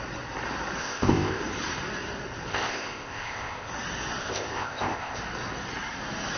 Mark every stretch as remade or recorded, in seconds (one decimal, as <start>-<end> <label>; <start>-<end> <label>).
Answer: 0.0-0.8 recorded; 0.8-1.4 remade; 1.4-2.5 recorded; 2.5-3.7 remade; 3.7-4.2 recorded; 4.2-5.2 remade; 5.2-6.4 recorded